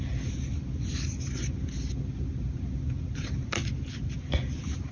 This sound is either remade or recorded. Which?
recorded